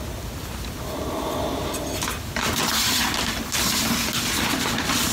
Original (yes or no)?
yes